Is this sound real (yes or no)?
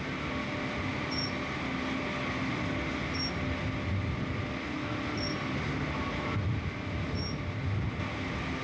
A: yes